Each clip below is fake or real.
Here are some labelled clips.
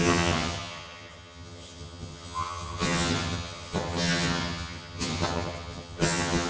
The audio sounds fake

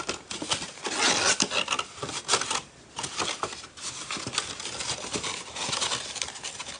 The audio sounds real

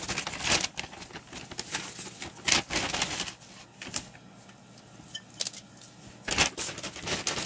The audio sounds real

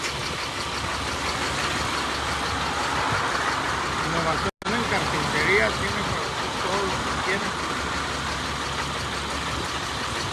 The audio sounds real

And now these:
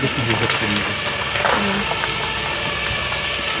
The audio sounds real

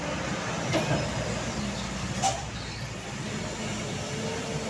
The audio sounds real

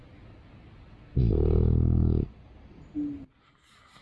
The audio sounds real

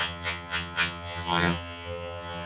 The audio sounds fake